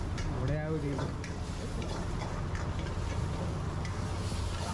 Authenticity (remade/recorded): recorded